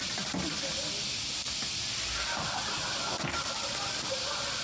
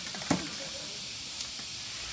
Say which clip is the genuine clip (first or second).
first